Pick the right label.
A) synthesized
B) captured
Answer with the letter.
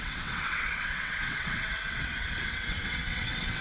A